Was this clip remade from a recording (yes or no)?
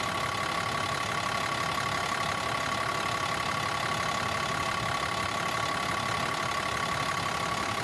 no